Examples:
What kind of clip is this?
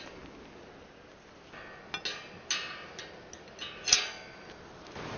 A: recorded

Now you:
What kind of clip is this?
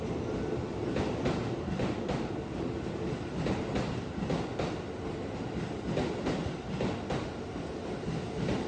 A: recorded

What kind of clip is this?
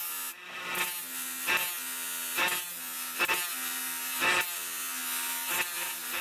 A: recorded